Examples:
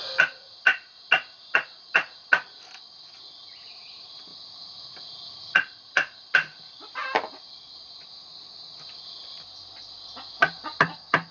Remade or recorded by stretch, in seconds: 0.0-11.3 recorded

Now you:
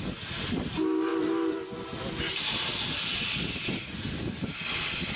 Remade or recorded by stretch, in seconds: 0.0-5.2 recorded

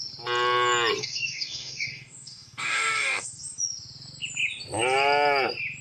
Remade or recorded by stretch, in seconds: 0.0-1.0 recorded; 1.0-3.4 remade; 3.4-5.8 recorded

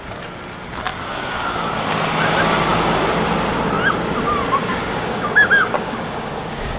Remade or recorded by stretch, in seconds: 0.0-0.9 recorded; 0.9-1.7 remade; 1.7-4.6 recorded; 4.6-6.8 remade

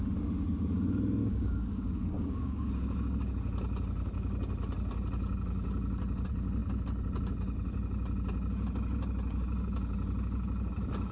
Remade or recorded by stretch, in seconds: 0.0-1.2 recorded; 1.2-2.7 remade; 2.7-11.1 recorded

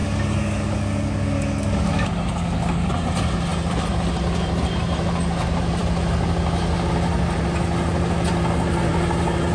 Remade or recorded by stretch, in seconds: 0.0-2.9 remade; 2.9-9.5 recorded